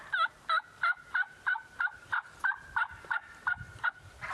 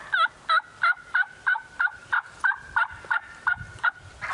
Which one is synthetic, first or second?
first